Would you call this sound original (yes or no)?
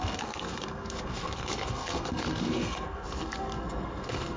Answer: no